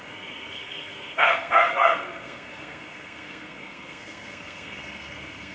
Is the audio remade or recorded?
remade